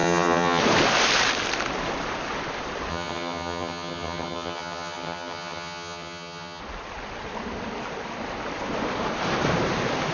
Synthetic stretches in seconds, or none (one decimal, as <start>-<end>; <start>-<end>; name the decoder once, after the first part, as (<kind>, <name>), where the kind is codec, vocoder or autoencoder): 0.0-0.6 (vocoder, HiFi-GAN); 2.9-6.6